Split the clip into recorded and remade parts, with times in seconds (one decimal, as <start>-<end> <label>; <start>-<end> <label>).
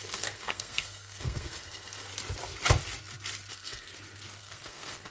0.0-2.1 remade; 2.1-3.5 recorded; 3.5-3.9 remade; 3.9-4.4 recorded; 4.4-5.1 remade